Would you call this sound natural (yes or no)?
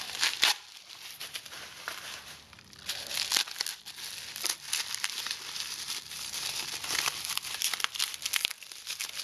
yes